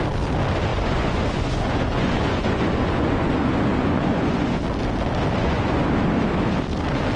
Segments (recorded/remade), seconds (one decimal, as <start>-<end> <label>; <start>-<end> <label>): 0.0-0.7 recorded; 0.7-4.6 remade; 4.6-5.4 recorded; 5.4-5.9 remade; 5.9-7.2 recorded